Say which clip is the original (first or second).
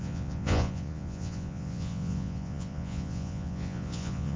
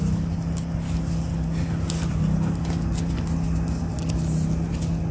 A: second